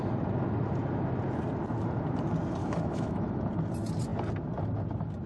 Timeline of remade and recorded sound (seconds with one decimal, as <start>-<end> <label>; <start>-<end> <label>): 0.0-2.6 recorded; 2.6-3.4 remade; 3.4-5.3 recorded